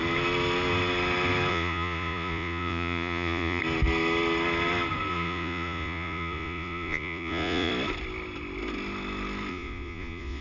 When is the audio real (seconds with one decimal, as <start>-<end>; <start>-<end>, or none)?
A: 0.0-1.5; 3.6-5.1; 7.7-9.5